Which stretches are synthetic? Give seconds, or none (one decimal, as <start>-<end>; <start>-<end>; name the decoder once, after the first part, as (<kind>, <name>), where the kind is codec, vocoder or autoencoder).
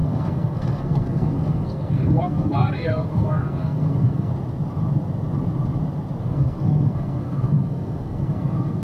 0.0-4.3 (codec, SNAC); 6.2-8.8